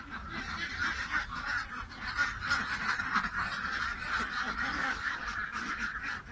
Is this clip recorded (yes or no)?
yes